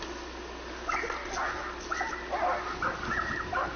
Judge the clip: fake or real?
real